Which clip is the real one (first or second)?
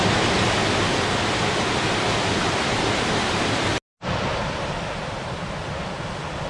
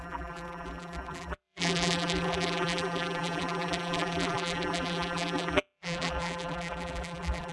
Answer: first